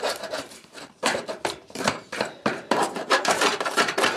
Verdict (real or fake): fake